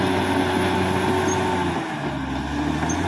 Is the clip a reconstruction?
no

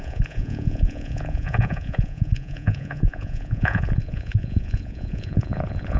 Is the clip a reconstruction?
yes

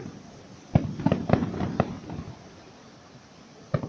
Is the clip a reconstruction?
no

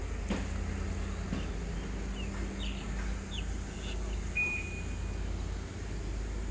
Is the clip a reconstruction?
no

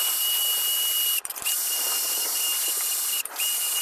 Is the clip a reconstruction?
yes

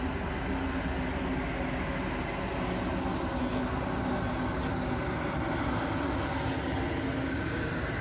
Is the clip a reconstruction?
no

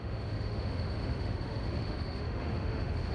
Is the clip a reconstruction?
yes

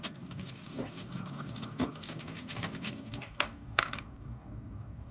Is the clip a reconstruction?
yes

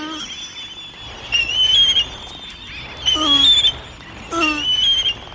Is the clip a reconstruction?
no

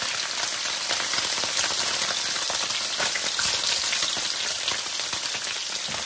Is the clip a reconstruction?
no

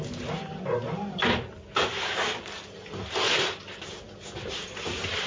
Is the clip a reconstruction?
no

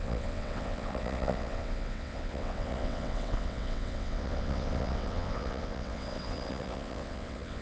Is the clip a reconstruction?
yes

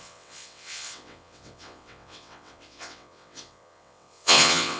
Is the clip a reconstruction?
yes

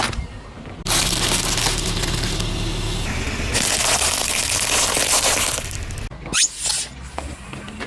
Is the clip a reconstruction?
no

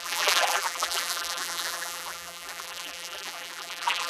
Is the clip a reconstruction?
yes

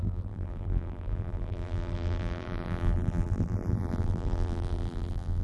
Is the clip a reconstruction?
yes